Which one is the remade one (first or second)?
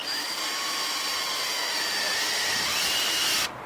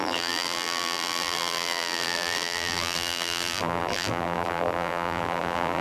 second